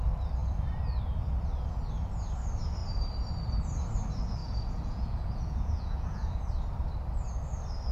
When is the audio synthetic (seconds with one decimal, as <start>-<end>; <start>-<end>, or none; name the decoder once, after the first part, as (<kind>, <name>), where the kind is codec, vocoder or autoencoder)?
4.4-6.4 (vocoder, Vocos)